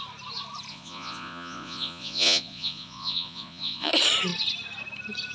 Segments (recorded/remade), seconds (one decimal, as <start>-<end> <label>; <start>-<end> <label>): 0.0-0.7 recorded; 0.7-3.9 remade; 3.9-5.3 recorded